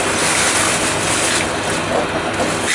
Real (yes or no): yes